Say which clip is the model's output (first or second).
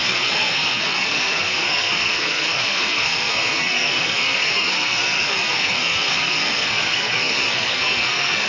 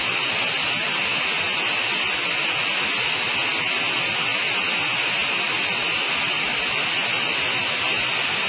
first